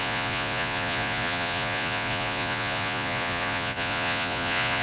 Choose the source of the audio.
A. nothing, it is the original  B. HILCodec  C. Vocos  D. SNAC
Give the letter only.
C